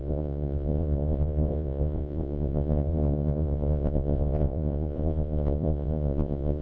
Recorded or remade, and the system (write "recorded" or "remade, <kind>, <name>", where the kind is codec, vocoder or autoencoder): remade, vocoder, Vocos